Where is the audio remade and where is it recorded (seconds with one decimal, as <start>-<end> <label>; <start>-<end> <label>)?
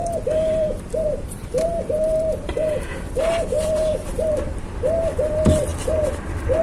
0.0-5.7 remade; 5.7-6.6 recorded